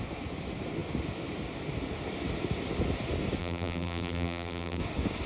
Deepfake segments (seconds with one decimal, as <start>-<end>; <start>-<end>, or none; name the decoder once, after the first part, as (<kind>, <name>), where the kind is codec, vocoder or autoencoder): 3.4-4.8 (vocoder, BigVGAN v2)